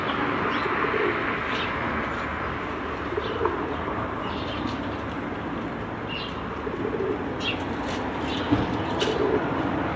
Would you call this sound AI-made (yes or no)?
no